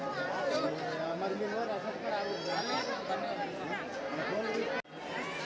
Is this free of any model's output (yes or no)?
yes